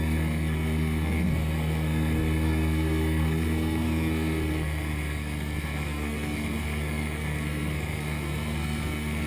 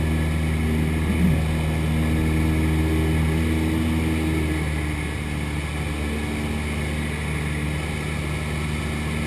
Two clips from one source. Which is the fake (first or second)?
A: first